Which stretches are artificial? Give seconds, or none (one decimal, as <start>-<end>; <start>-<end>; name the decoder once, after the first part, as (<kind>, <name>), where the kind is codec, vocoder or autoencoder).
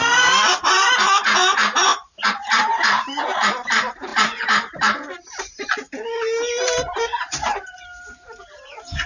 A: 0.0-9.1 (vocoder, BigVGAN v2)